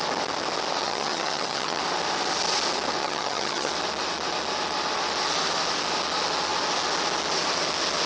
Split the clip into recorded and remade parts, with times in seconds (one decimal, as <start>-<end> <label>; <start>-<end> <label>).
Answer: 0.0-0.8 recorded; 0.8-1.8 remade; 1.8-3.0 recorded; 3.0-3.7 remade; 3.7-8.1 recorded